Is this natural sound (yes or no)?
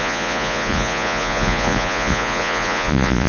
no